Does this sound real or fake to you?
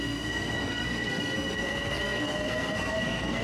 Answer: fake